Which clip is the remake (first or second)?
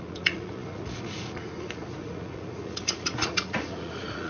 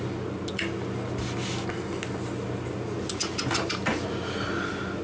first